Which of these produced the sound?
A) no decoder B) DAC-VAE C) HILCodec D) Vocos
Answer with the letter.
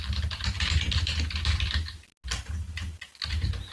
A